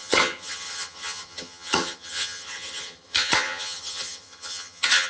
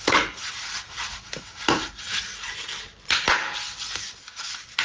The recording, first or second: second